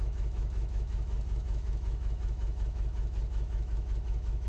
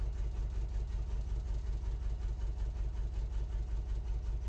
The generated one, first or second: first